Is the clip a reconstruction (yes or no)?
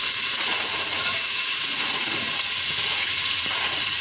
yes